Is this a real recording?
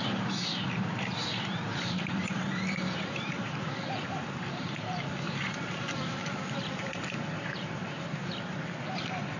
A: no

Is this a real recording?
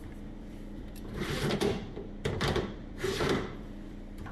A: no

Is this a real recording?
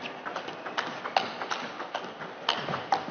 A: yes